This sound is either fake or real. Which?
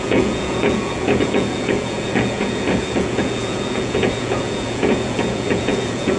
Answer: fake